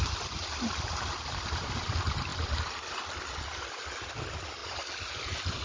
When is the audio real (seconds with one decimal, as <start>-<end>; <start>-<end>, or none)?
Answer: 0.0-2.3; 4.1-4.6; 5.1-5.6